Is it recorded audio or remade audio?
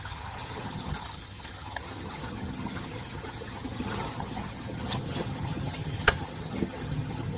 remade